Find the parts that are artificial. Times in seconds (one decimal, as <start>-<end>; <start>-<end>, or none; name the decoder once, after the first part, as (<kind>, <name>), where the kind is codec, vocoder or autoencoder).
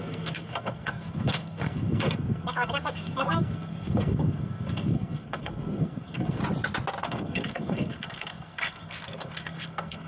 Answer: 0.0-6.4 (codec, SNAC); 7.0-10.1